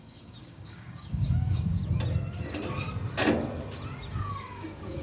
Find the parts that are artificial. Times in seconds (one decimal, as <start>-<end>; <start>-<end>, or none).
0.0-1.8; 4.1-5.0

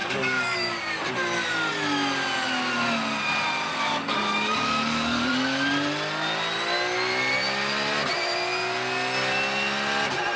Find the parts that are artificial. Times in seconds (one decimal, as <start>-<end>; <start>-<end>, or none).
0.0-0.9; 3.7-5.3